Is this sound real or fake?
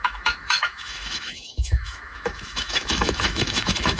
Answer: fake